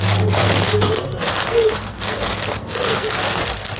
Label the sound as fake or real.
fake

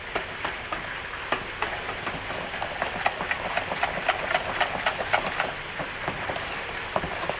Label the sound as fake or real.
real